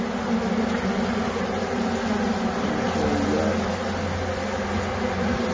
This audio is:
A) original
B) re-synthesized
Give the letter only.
A